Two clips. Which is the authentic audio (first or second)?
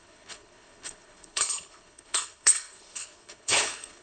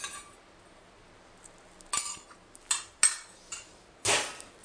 second